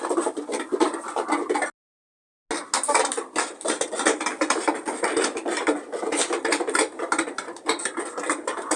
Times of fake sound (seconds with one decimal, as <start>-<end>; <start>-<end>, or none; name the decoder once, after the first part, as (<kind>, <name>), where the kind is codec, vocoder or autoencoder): none